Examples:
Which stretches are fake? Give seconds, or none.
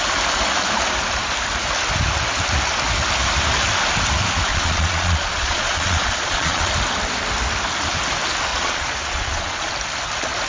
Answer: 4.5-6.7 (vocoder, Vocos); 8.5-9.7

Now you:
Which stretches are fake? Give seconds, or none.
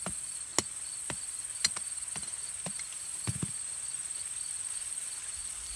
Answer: none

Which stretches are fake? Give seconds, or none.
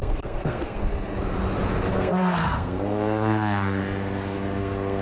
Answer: 0.0-0.8 (codec, SNAC); 1.9-3.8; 4.6-5.0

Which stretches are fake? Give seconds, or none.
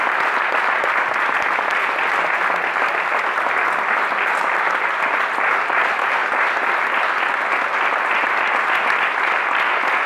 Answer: 6.2-6.7 (vocoder, BigVGAN v2)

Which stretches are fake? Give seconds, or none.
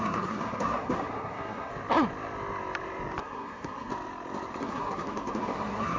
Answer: 0.0-1.7 (codec, SNAC); 3.2-3.9; 4.6-6.0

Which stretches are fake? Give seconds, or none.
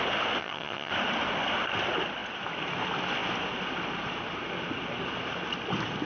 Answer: 0.4-0.9 (vocoder, HiFi-GAN)